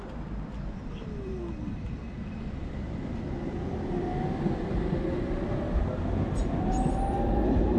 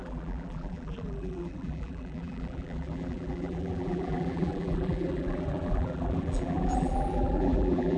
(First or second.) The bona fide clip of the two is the first